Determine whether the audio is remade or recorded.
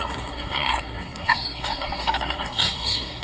remade